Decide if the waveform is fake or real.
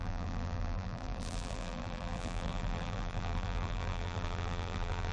fake